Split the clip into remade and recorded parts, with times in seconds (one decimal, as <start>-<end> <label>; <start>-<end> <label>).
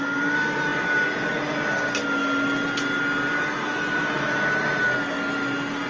0.0-5.9 recorded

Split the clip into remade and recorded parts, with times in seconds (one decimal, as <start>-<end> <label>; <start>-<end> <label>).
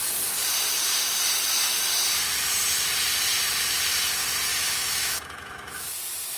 0.0-4.5 recorded; 4.5-5.9 remade; 5.9-6.4 recorded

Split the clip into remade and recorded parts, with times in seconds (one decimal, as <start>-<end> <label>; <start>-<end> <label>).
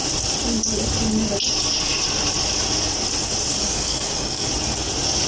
0.0-3.6 recorded; 3.6-4.5 remade; 4.5-5.3 recorded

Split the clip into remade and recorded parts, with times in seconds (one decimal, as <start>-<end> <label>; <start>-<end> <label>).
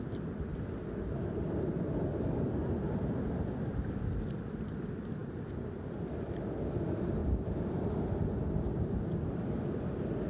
0.0-0.5 recorded; 0.5-2.0 remade; 2.0-5.2 recorded; 5.2-6.5 remade; 6.5-7.2 recorded; 7.2-7.8 remade; 7.8-10.3 recorded